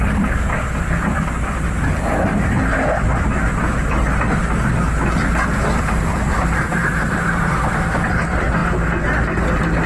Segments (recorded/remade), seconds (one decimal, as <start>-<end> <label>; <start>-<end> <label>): 0.0-2.3 remade; 2.3-5.8 recorded; 5.8-8.6 remade; 8.6-9.9 recorded